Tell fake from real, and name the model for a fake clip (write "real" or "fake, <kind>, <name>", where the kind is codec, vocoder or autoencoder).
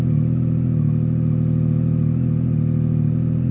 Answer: real